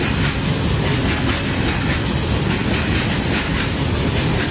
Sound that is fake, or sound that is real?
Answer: real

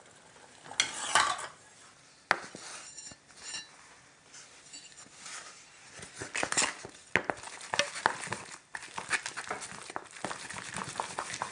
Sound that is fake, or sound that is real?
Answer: real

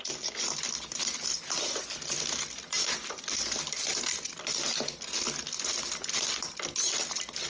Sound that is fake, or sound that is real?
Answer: real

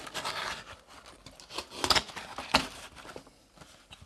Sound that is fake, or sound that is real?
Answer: real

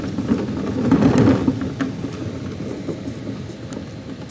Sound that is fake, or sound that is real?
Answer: real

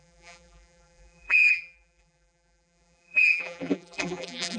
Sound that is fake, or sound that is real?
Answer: fake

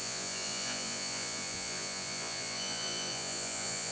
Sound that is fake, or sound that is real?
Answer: fake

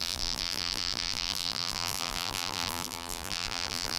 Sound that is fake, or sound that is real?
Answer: fake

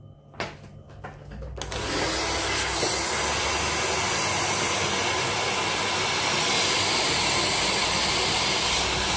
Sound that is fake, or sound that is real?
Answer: real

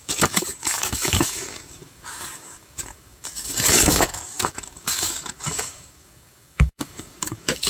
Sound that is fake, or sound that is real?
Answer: fake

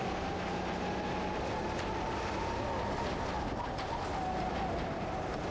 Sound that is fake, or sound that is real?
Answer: real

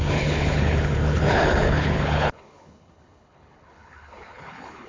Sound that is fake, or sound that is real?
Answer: fake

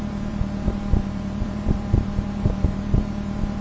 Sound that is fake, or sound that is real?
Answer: fake